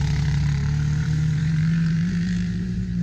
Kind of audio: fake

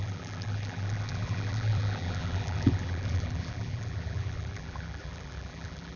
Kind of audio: fake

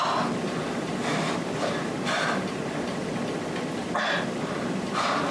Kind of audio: real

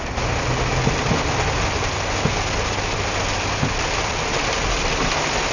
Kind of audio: real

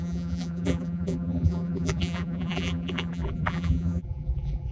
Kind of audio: fake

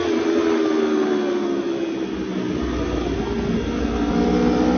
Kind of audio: real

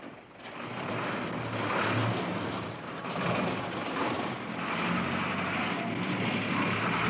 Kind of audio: real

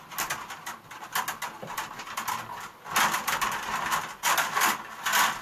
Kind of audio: real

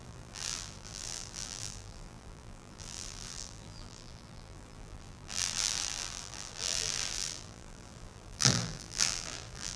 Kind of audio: fake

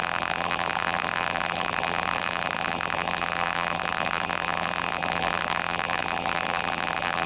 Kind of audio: fake